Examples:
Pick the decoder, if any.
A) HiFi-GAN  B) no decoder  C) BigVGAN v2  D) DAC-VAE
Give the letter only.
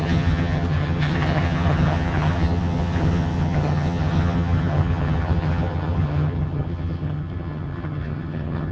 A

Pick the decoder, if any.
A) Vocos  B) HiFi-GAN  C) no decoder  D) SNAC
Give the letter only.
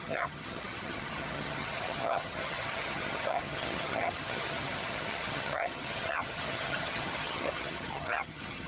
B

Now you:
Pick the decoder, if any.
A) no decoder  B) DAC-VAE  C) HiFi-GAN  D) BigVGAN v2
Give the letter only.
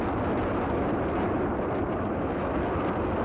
A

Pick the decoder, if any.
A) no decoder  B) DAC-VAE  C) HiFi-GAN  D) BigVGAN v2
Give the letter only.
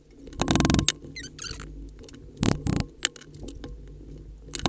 A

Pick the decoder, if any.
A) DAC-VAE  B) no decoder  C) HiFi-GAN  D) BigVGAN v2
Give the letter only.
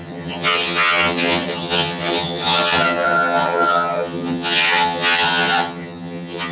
C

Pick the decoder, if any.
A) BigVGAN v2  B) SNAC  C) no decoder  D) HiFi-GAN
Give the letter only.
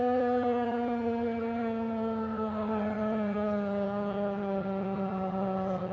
D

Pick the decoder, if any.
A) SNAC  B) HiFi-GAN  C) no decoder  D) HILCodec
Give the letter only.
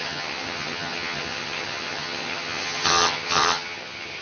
B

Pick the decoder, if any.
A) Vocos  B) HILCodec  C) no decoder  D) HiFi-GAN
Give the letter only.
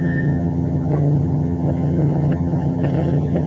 D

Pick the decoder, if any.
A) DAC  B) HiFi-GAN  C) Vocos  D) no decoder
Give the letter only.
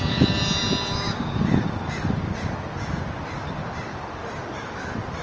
D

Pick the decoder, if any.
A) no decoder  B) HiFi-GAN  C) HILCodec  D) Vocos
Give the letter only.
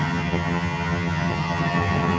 B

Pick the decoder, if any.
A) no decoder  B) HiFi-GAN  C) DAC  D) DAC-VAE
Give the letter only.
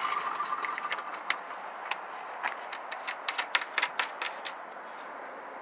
A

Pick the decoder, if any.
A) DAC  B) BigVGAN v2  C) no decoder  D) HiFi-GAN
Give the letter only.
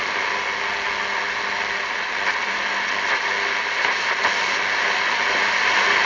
C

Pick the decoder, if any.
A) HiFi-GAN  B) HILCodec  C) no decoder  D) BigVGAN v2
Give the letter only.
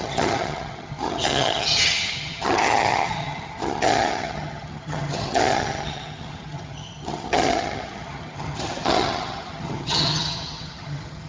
A